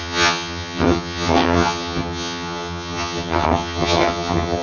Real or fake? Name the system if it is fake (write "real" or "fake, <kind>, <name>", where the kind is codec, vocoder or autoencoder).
fake, vocoder, HiFi-GAN